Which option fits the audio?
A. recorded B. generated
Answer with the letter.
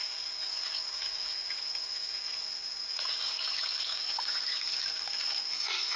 A